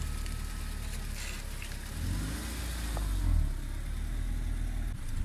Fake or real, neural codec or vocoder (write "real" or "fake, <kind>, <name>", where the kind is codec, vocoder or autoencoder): real